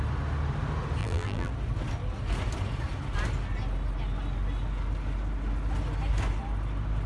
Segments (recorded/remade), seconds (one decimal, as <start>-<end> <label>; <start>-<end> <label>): 0.0-1.0 recorded; 1.0-1.5 remade; 1.5-7.1 recorded